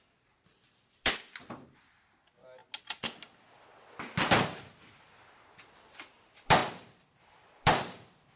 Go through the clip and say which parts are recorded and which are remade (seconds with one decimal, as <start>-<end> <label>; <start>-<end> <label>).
0.0-2.6 remade; 2.6-5.5 recorded; 5.5-8.4 remade